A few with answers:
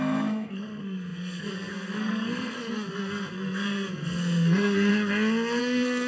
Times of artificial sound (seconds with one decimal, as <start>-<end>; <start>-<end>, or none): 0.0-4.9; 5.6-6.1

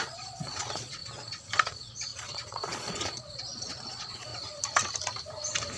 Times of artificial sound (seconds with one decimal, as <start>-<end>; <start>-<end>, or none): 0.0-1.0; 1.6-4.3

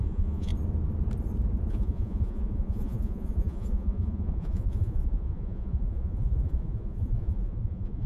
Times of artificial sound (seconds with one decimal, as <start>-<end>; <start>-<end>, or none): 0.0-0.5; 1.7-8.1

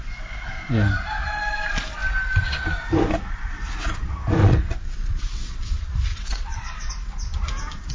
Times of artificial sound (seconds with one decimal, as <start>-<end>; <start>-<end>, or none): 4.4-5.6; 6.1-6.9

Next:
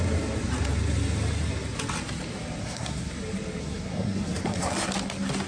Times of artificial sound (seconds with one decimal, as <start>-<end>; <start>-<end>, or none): 2.6-3.1; 3.6-4.7